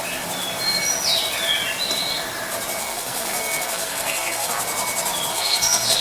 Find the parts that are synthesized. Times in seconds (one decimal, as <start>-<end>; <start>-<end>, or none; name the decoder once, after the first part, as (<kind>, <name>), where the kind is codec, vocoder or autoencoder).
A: 2.8-4.6 (codec, SNAC); 5.3-6.0

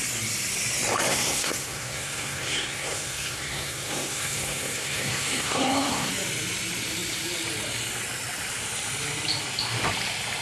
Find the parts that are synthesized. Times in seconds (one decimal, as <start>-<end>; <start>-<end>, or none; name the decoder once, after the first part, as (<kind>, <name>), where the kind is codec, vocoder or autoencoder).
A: 1.1-6.1 (codec, SNAC)

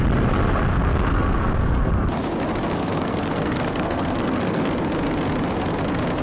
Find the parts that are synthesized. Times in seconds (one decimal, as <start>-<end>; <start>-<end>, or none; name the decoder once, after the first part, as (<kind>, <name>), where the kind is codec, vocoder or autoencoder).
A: 0.7-1.9 (codec, SNAC); 2.7-4.7

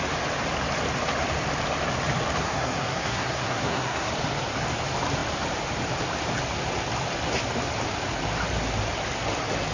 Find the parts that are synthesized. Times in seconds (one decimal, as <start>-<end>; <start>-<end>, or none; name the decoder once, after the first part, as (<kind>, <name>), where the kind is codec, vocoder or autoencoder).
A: 2.4-4.1 (codec, SNAC)

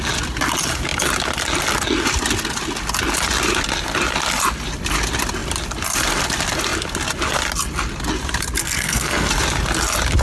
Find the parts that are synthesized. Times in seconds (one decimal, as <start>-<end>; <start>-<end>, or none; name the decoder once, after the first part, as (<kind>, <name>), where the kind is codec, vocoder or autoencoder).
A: 8.6-9.3 (codec, SNAC)

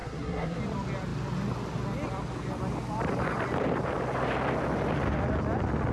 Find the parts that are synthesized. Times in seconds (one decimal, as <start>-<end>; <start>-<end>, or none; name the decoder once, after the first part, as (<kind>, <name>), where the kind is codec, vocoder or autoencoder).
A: 0.0-0.6 (codec, SNAC)

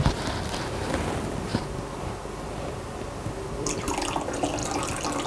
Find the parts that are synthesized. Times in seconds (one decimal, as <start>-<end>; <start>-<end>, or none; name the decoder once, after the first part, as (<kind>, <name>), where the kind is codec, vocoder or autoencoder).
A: none